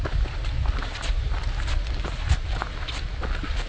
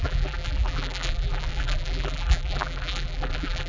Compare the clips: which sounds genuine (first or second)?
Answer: first